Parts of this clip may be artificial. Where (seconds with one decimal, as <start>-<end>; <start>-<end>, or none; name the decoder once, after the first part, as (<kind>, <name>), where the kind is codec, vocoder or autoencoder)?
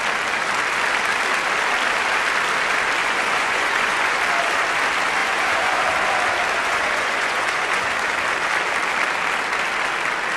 3.0-4.2 (vocoder, Vocos); 5.2-5.8; 6.6-7.9